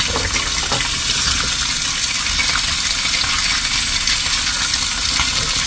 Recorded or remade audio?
recorded